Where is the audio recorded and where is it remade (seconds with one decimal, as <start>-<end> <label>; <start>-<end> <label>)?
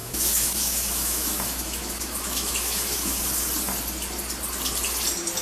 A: 0.0-3.2 remade; 3.2-5.4 recorded